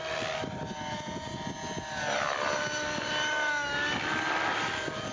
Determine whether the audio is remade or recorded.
recorded